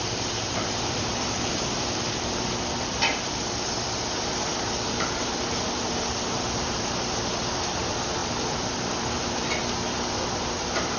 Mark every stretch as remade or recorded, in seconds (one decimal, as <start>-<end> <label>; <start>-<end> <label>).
0.0-11.0 remade